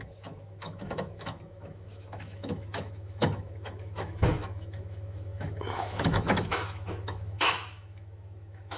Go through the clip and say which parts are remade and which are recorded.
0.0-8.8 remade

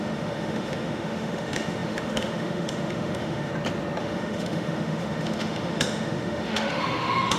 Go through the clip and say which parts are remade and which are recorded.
0.0-3.5 remade; 3.5-4.0 recorded; 4.0-7.4 remade

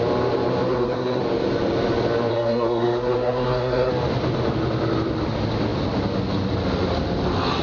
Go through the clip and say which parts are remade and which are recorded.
0.0-0.7 recorded; 0.7-1.2 remade; 1.2-2.3 recorded; 2.3-3.9 remade; 3.9-7.6 recorded

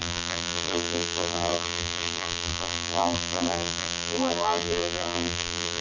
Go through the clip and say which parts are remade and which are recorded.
0.0-5.8 remade

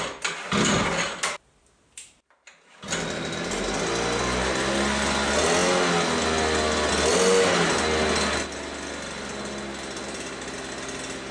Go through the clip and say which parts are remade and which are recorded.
0.0-11.3 recorded

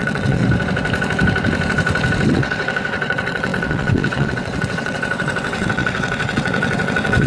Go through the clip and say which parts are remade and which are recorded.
0.0-0.4 remade; 0.4-2.3 recorded; 2.3-7.3 remade

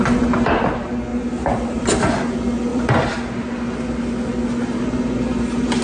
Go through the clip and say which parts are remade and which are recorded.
0.0-1.1 recorded; 1.1-2.2 remade; 2.2-2.7 recorded; 2.7-3.4 remade; 3.4-5.8 recorded

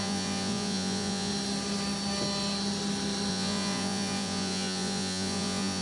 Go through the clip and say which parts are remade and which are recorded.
0.0-1.3 remade; 1.3-3.3 recorded; 3.3-5.8 remade